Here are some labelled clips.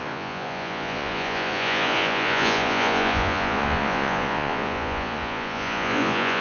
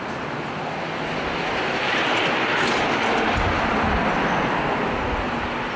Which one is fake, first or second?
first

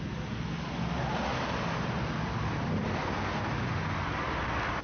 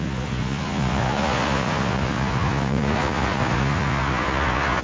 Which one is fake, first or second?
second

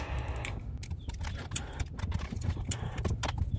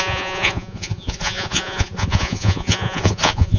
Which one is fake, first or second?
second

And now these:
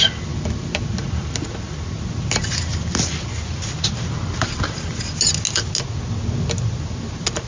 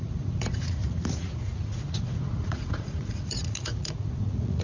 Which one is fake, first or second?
second